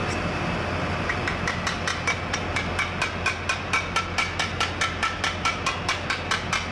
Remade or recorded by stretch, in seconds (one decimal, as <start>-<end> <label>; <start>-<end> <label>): 0.0-6.7 recorded